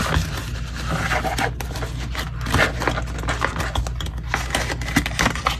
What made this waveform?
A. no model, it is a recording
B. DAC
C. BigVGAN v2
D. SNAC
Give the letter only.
A